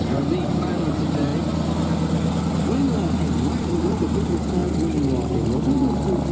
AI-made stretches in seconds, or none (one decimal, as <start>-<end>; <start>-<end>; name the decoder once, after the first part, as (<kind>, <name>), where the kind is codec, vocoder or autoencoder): 0.0-1.3 (vocoder, BigVGAN v2); 3.5-4.6